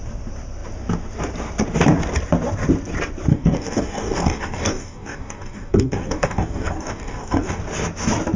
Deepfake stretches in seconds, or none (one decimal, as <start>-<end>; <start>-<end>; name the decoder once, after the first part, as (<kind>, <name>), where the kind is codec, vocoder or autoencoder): 3.3-7.6 (codec, DAC)